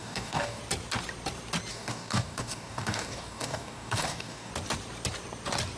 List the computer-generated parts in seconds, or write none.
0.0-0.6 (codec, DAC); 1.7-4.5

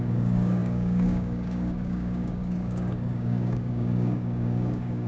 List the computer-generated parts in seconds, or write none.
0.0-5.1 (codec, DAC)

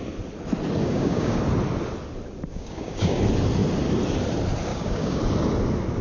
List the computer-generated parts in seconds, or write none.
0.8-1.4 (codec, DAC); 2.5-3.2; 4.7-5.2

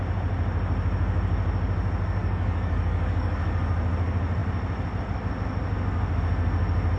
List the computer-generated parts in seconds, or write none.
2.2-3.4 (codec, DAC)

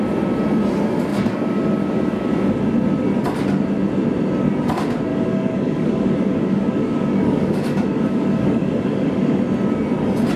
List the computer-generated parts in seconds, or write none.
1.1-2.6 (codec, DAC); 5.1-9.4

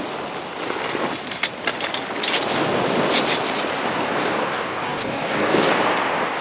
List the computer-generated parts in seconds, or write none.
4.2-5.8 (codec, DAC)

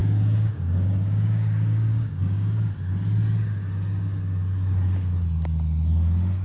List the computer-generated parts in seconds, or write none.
0.0-2.7 (codec, DAC)

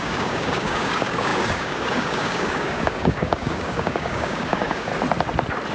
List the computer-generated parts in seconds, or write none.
0.0-4.9 (codec, DAC)